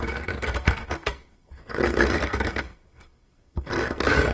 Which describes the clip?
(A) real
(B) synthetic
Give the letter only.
B